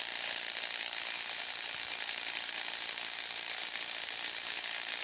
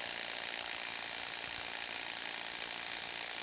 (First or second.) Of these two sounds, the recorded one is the second